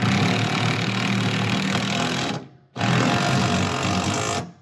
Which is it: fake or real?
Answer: real